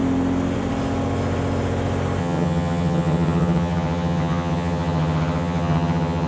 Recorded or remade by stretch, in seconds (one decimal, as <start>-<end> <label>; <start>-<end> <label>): 0.0-2.2 recorded; 2.2-6.3 remade